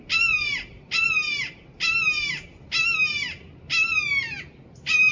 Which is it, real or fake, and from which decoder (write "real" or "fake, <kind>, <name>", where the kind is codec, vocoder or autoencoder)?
real